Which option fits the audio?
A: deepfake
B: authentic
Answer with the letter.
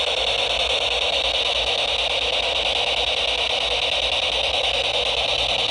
B